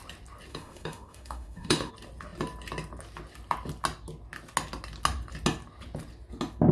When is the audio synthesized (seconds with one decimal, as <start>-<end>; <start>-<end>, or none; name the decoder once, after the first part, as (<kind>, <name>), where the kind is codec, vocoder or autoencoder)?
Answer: 0.5-1.9 (autoencoder, DAC-VAE)

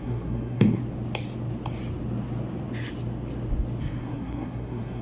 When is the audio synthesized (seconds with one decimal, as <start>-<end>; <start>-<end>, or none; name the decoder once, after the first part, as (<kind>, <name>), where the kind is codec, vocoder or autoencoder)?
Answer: 0.0-0.8 (codec, SNAC); 3.8-5.0

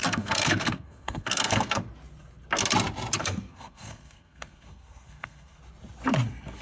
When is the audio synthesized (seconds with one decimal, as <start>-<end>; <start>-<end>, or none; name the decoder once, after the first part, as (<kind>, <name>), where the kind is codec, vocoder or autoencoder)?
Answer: 0.0-1.8 (codec, SNAC); 3.2-5.6

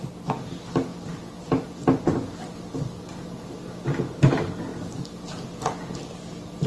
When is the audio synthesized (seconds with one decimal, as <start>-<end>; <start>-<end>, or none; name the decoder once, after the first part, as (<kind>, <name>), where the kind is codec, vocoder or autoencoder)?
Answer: none

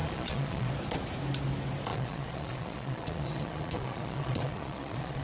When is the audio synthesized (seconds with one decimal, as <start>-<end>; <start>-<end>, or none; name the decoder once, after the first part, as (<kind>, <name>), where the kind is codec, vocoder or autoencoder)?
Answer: 0.0-0.7 (vocoder, Vocos); 1.9-5.2

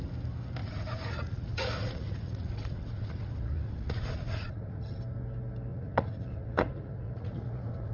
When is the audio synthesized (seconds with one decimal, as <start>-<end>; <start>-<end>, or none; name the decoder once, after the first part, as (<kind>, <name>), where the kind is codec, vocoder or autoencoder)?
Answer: 0.6-5.0 (vocoder, Vocos); 5.7-7.9

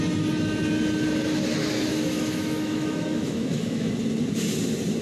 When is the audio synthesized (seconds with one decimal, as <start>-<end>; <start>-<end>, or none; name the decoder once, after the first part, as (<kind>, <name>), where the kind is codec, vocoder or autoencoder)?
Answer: 1.9-3.9 (autoencoder, DAC-VAE)